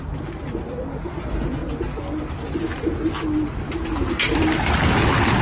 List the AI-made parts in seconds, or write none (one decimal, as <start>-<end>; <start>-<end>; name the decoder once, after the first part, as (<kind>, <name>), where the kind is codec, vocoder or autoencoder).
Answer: none